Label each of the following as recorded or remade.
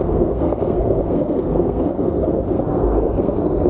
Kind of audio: remade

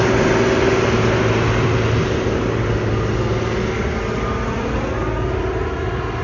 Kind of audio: recorded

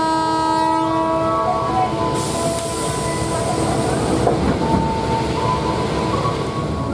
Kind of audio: recorded